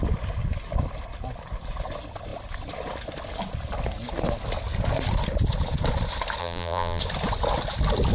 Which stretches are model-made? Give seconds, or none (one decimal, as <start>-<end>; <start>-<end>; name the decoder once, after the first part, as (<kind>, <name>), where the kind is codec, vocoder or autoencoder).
6.4-7.0 (vocoder, BigVGAN v2)